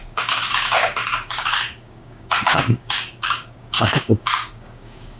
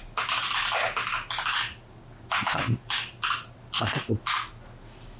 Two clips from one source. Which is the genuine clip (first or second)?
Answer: second